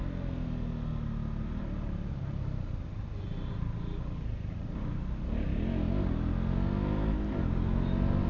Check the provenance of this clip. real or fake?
real